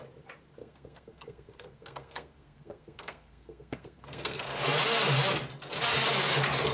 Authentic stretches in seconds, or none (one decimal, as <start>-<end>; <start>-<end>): 0.0-0.6; 4.6-6.7